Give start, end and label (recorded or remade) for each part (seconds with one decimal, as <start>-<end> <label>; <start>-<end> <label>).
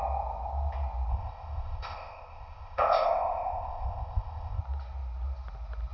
0.0-1.1 recorded; 1.1-4.6 remade; 4.6-5.9 recorded